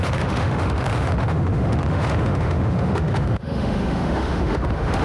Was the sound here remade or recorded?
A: remade